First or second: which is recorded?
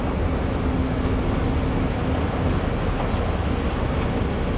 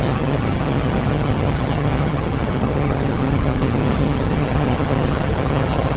first